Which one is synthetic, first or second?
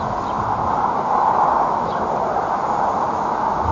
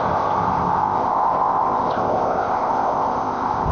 second